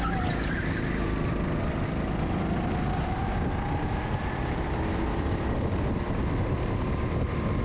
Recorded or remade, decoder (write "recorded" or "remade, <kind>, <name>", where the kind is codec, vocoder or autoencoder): recorded